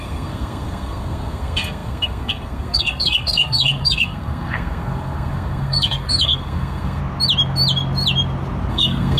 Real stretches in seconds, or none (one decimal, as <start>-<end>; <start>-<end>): 7.0-8.7